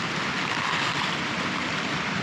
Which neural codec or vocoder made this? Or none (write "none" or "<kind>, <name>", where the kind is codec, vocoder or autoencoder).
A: none